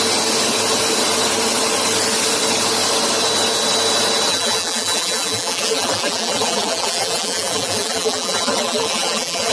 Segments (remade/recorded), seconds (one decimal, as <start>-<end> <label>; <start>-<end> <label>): 0.0-4.3 recorded; 4.3-9.5 remade